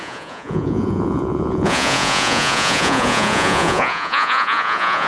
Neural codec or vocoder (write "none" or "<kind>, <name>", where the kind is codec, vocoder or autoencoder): vocoder, Vocos